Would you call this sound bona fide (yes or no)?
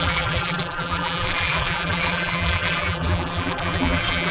no